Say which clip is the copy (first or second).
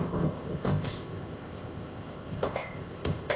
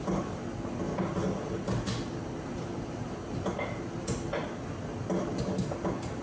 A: first